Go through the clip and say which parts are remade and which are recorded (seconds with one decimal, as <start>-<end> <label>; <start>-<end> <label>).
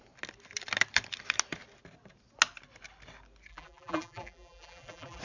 0.0-3.5 recorded; 3.5-5.2 remade